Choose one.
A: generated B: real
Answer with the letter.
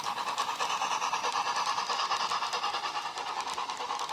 B